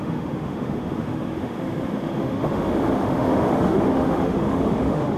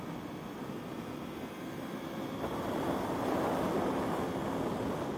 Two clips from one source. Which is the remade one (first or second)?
first